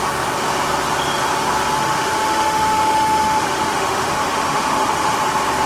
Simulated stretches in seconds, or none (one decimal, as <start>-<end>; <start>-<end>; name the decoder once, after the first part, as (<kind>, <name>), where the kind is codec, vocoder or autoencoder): 1.8-5.2 (autoencoder, DAC-VAE)